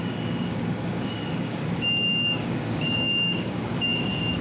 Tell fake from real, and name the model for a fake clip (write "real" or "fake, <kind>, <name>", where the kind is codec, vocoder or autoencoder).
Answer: fake, codec, DAC